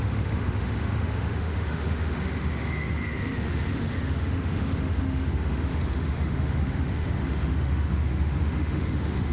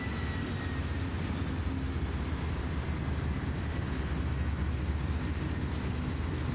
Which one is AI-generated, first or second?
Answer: first